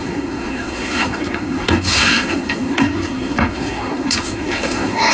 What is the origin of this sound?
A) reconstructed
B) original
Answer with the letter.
A